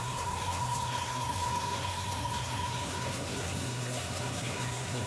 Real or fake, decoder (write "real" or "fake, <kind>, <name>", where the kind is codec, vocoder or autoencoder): fake, codec, SNAC